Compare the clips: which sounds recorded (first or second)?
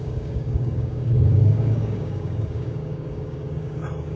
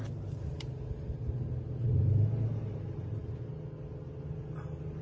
second